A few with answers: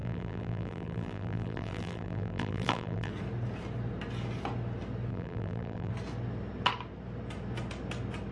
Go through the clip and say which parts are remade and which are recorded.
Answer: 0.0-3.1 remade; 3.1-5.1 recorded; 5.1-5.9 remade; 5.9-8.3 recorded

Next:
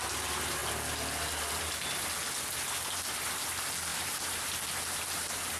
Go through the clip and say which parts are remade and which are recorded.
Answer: 0.0-3.9 recorded; 3.9-4.5 remade; 4.5-5.6 recorded